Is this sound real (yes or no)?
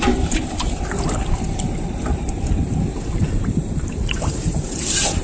no